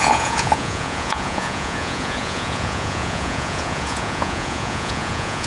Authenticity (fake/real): fake